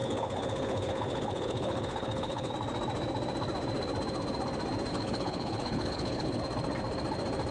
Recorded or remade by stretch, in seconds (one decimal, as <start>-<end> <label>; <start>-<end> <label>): 0.0-2.5 remade; 2.5-4.9 recorded; 4.9-6.4 remade; 6.4-7.5 recorded